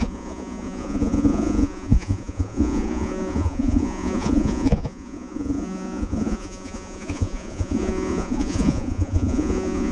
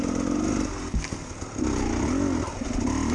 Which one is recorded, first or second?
second